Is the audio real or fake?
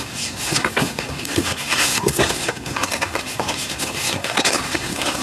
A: fake